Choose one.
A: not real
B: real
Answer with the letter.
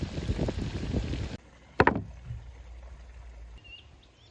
B